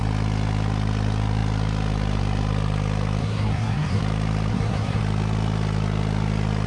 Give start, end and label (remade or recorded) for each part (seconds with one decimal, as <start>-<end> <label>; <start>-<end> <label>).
0.0-3.2 recorded; 3.2-4.0 remade; 4.0-4.5 recorded; 4.5-5.0 remade; 5.0-6.7 recorded